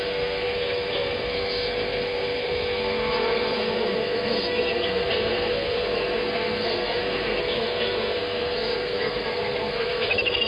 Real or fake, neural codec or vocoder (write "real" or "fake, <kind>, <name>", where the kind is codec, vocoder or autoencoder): fake, codec, SNAC